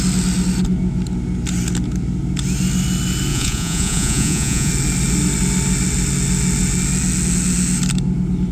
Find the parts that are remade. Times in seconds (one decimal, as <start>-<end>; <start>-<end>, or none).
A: 3.3-4.7